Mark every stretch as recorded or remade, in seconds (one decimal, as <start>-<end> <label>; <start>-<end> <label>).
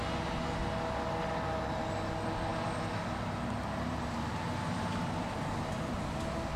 0.0-2.5 recorded; 2.5-6.6 remade